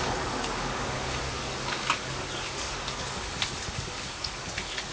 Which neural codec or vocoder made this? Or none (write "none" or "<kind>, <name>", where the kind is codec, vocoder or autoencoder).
codec, DAC